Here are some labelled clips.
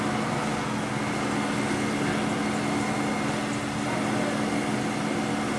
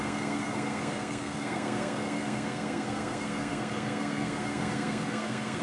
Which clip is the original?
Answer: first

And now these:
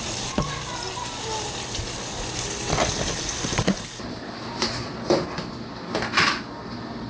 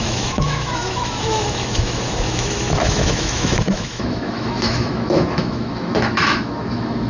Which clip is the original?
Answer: first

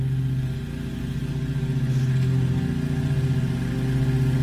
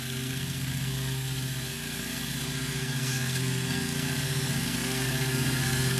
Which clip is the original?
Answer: first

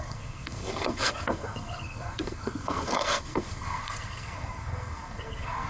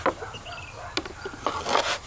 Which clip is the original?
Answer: second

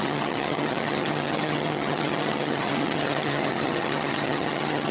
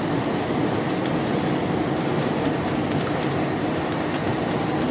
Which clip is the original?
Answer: second